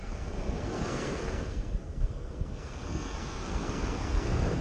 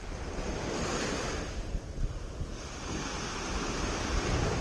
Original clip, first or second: second